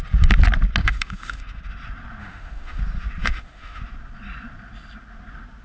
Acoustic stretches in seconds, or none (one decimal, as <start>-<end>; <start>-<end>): 0.0-0.8; 1.6-2.2; 2.8-3.2; 3.8-5.6